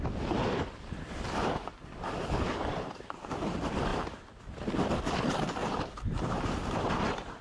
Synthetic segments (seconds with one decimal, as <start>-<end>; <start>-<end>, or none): 0.0-0.4; 2.3-3.9; 4.9-7.4